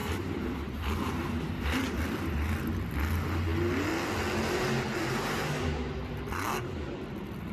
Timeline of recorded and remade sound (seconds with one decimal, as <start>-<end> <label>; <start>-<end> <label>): 0.0-0.7 remade; 0.7-7.5 recorded